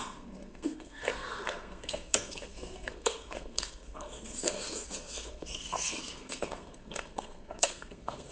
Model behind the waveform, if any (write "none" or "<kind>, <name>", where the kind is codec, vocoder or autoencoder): codec, SNAC